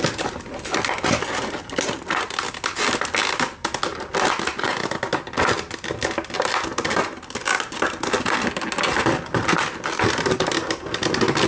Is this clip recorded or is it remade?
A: recorded